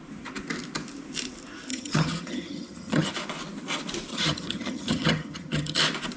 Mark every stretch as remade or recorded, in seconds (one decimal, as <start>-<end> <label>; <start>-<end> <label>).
0.0-1.7 recorded; 1.7-3.1 remade; 3.1-4.1 recorded; 4.1-5.8 remade; 5.8-6.2 recorded